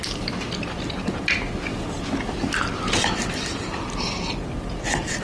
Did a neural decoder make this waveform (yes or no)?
no